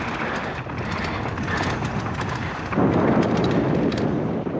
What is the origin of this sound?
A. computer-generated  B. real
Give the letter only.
B